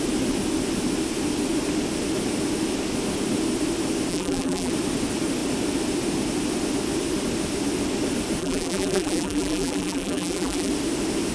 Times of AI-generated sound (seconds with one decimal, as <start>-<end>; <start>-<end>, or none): 4.1-4.7; 8.4-10.7